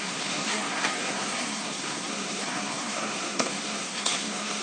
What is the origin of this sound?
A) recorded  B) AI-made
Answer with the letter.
B